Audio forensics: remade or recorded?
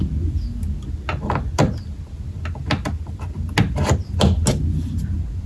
recorded